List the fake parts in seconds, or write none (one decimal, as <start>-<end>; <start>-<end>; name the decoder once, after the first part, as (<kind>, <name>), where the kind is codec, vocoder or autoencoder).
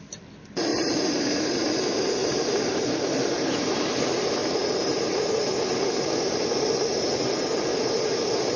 0.7-1.7 (vocoder, BigVGAN v2); 2.2-4.0; 4.4-6.9; 7.7-8.2